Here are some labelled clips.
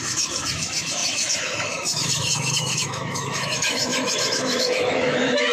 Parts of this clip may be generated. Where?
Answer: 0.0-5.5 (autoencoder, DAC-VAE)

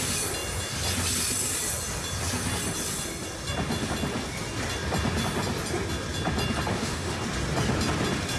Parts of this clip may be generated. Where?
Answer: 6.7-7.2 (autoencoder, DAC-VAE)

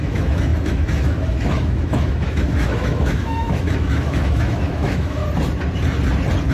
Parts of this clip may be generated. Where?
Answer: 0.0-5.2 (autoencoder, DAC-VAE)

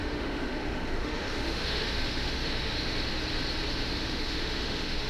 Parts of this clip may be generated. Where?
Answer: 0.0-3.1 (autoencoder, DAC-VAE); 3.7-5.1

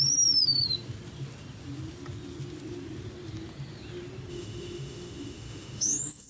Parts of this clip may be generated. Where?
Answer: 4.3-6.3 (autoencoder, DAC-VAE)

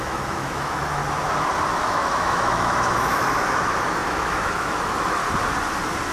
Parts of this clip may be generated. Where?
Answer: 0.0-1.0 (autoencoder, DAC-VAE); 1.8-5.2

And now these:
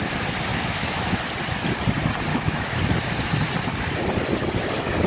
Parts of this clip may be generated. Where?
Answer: 0.5-1.2 (autoencoder, DAC-VAE); 2.3-2.8